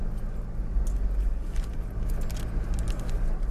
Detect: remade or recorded recorded